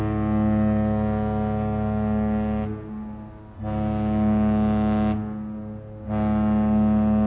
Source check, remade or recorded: recorded